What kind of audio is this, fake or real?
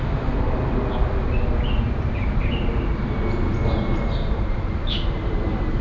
real